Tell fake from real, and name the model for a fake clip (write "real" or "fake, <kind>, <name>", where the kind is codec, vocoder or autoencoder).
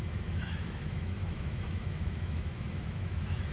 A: fake, autoencoder, DAC-VAE